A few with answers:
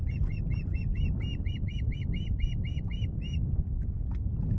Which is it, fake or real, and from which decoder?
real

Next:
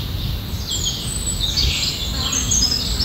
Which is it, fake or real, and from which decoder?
real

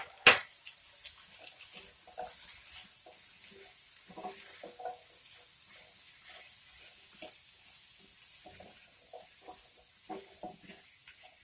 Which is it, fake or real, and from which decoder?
real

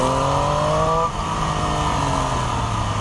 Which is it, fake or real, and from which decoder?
real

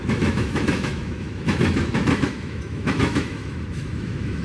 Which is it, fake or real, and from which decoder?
fake, autoencoder, DAC-VAE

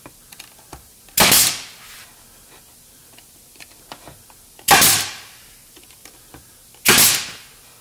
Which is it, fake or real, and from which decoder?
real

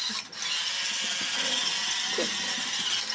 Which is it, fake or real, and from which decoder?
real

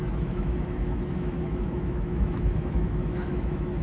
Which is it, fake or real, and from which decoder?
fake, autoencoder, DAC-VAE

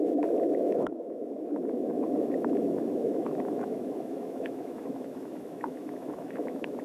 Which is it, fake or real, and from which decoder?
fake, autoencoder, DAC-VAE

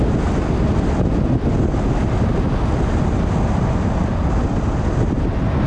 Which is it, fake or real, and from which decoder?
real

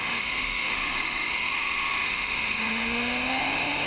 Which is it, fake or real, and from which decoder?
fake, autoencoder, DAC-VAE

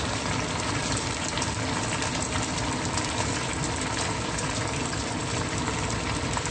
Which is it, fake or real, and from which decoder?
real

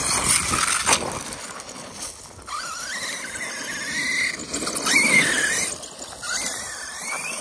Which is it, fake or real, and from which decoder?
real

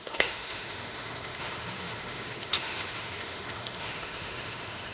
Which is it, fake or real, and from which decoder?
fake, autoencoder, DAC-VAE